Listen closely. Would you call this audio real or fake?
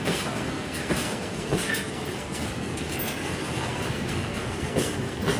fake